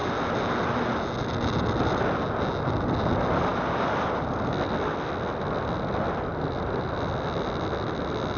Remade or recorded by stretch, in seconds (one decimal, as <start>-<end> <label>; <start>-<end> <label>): 0.0-8.4 recorded